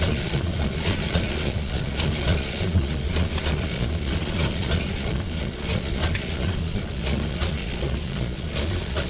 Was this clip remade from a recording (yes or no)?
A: yes